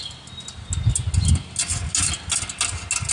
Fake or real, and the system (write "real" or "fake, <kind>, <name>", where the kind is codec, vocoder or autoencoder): real